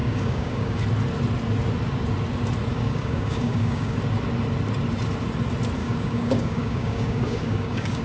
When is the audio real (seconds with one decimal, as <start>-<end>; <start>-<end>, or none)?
0.8-2.7; 4.0-5.8